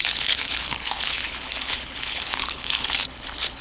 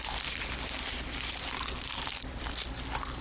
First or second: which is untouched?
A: second